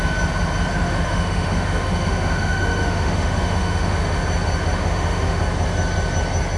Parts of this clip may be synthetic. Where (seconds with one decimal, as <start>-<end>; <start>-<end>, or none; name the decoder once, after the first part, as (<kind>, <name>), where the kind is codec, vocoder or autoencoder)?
0.7-4.2 (autoencoder, DAC-VAE); 4.8-5.4